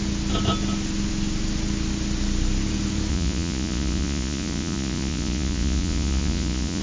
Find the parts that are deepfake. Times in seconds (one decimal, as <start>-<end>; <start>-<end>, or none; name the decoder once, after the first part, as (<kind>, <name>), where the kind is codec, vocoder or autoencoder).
3.1-6.8 (vocoder, Vocos)